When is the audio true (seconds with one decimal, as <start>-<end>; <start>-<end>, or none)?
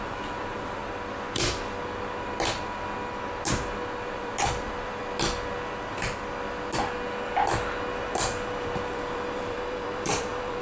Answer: 0.8-4.1; 5.0-7.9